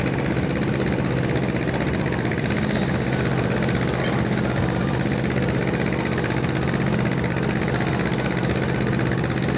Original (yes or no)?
yes